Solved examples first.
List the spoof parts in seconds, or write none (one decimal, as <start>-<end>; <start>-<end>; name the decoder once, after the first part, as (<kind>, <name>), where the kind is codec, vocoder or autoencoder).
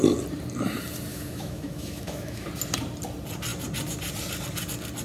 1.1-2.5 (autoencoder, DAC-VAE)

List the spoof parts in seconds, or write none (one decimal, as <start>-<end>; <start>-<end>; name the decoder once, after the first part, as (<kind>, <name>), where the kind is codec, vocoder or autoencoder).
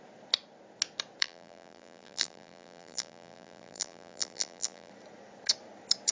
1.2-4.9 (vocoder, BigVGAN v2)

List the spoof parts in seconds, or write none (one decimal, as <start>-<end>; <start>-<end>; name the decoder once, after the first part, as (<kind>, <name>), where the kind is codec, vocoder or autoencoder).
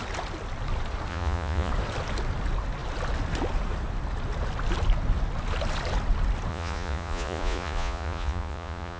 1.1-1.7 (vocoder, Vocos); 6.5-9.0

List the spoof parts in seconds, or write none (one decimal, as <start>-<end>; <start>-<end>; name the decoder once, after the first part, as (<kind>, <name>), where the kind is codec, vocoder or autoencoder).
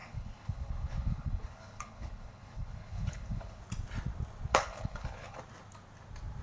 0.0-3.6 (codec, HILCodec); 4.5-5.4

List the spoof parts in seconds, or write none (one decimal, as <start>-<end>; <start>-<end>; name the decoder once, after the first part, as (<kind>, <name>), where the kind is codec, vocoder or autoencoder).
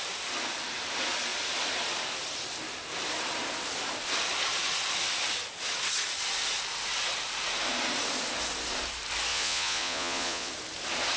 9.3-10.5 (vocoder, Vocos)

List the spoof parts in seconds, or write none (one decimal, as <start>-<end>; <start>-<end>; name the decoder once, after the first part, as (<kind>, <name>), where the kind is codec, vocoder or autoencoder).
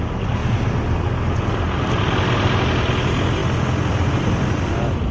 none